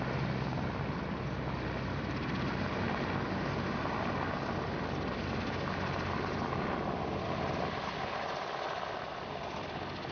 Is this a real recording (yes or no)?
yes